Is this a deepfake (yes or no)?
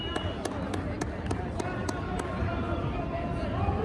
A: no